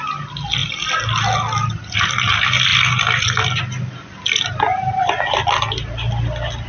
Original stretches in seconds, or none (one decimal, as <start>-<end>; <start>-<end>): 0.0-6.7

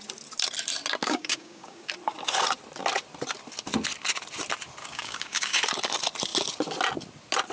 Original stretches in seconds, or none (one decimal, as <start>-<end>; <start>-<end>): 0.0-1.0; 1.9-4.8; 5.6-7.5

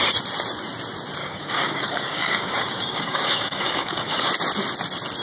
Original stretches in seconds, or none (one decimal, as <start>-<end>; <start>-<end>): 0.0-1.2; 4.3-5.2

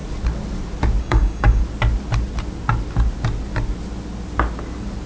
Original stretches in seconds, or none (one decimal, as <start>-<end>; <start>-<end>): 0.0-1.0; 1.6-5.1

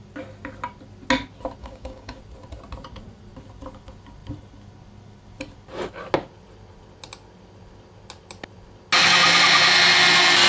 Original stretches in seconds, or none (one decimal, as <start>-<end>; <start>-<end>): 0.0-1.6; 2.2-10.5

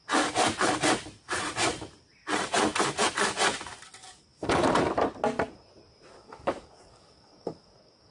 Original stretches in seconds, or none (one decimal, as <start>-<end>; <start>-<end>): 0.0-4.0; 4.8-6.2

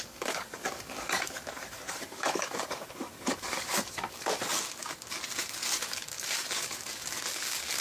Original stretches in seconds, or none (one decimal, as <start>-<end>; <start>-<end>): none

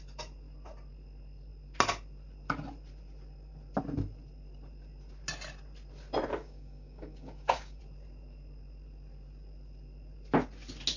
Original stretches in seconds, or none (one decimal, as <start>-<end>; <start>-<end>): 0.0-6.3; 7.8-11.0